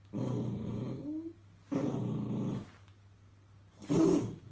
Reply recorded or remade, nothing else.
recorded